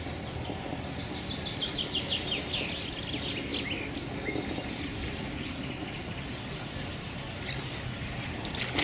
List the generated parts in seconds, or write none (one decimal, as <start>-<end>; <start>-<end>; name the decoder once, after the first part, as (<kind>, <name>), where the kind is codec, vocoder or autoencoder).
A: none